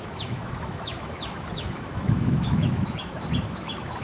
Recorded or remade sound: remade